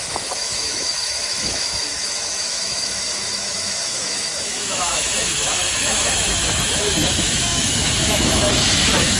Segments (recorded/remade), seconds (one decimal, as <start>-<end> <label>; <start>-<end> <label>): 0.0-9.2 remade